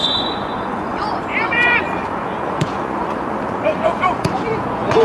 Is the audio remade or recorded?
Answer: remade